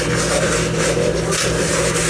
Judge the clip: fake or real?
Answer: real